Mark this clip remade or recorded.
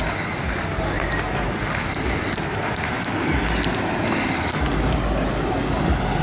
recorded